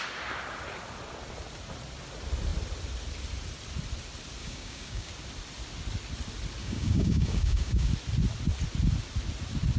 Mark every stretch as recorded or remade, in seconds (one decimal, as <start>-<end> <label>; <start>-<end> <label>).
0.0-4.4 recorded; 4.4-5.1 remade; 5.1-6.6 recorded; 6.6-7.9 remade; 7.9-9.8 recorded